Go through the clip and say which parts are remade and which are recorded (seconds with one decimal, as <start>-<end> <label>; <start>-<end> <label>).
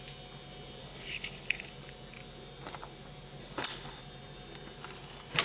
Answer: 0.0-0.8 recorded; 0.8-1.7 remade; 1.7-3.4 recorded; 3.4-4.0 remade; 4.0-5.4 recorded